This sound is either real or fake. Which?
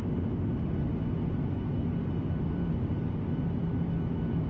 real